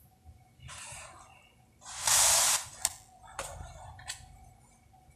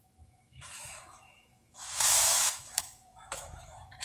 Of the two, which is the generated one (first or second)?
second